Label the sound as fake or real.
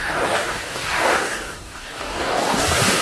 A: fake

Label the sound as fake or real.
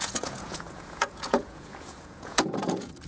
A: fake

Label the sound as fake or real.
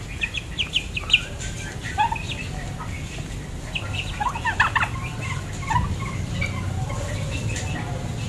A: real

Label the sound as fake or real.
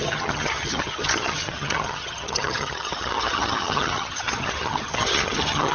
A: fake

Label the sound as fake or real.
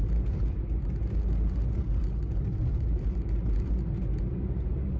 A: real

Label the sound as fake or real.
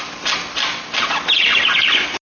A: real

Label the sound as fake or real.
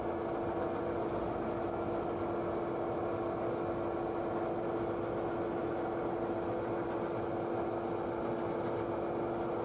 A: real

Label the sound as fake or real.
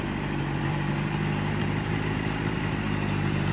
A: fake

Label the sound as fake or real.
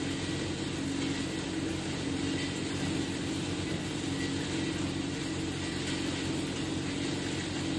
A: real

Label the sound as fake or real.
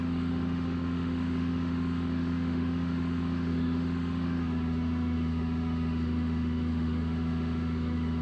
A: fake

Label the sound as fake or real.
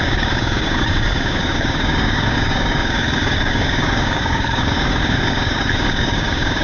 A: fake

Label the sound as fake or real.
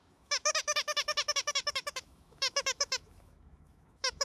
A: fake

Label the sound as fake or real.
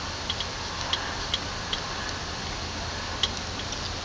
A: real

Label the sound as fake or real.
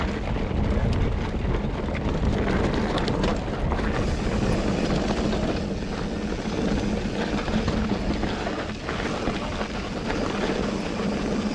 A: real